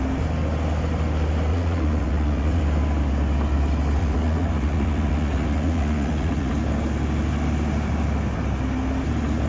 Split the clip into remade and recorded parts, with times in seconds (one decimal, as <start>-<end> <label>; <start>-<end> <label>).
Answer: 0.0-1.5 recorded; 1.5-2.6 remade; 2.6-4.0 recorded; 4.0-6.5 remade; 6.5-9.5 recorded